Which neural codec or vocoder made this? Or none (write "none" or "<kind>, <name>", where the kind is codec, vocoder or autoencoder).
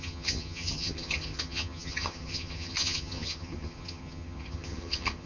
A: vocoder, HiFi-GAN